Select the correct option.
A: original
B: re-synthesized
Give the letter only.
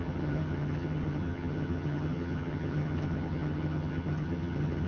B